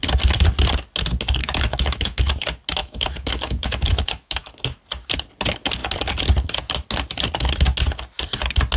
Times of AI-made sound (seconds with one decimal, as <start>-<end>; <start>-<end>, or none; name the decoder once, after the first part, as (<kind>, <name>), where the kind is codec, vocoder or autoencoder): 1.4-2.2 (autoencoder, DAC-VAE); 2.8-4.5